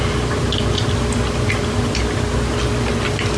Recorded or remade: recorded